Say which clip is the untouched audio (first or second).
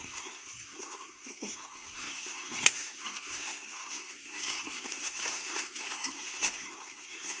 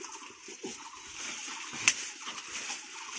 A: second